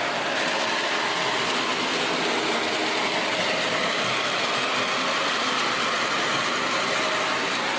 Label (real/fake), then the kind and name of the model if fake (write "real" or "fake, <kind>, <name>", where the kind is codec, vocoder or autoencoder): real